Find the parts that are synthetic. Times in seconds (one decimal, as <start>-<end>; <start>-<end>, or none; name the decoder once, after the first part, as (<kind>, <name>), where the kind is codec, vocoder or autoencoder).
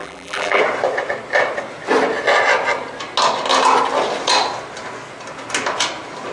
0.0-0.6 (vocoder, BigVGAN v2)